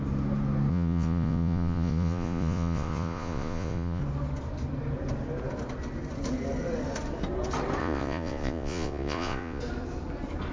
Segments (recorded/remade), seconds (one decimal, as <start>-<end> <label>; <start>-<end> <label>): 0.0-0.7 recorded; 0.7-4.0 remade; 4.0-7.8 recorded; 7.8-9.6 remade; 9.6-10.5 recorded